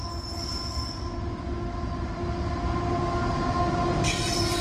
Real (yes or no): yes